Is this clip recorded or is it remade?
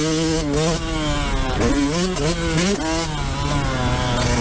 recorded